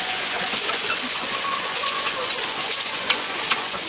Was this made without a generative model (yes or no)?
no